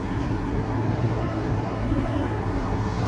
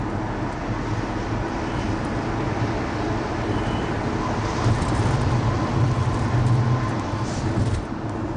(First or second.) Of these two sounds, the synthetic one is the first